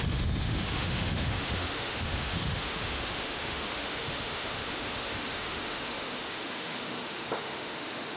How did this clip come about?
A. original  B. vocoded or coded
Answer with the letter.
B